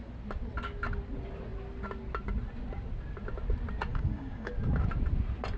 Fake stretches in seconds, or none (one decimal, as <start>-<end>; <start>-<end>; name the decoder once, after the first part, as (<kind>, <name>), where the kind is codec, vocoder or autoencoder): 3.9-4.5 (codec, DAC)